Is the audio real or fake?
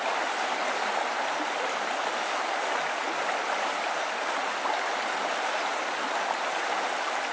real